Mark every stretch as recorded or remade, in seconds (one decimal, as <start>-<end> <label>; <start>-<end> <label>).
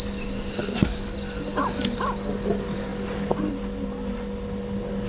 0.0-5.1 recorded